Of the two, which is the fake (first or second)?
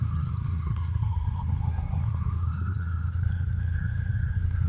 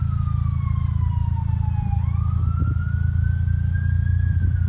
first